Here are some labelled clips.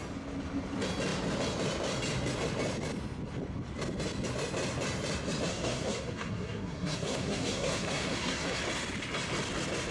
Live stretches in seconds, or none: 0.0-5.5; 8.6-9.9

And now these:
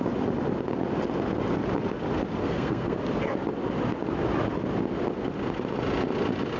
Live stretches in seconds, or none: 0.0-2.4; 3.0-6.6